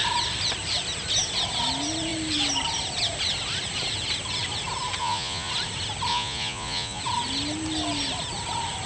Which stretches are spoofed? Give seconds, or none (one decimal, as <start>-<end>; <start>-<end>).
5.0-5.5; 6.1-7.0